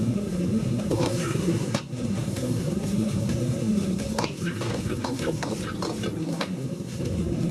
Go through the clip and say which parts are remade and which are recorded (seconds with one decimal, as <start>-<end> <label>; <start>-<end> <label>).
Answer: 0.0-5.5 remade; 5.5-6.2 recorded; 6.2-7.5 remade